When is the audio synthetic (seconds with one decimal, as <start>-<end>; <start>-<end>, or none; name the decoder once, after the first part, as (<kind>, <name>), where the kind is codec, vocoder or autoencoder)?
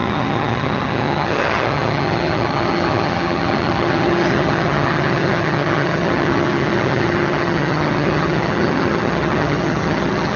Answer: 0.0-10.4 (vocoder, HiFi-GAN)